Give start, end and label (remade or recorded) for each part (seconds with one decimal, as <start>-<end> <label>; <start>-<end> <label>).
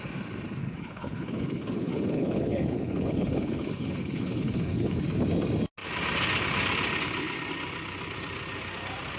0.0-0.6 recorded; 0.6-5.0 remade; 5.0-9.2 recorded